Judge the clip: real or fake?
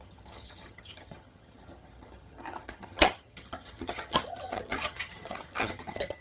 fake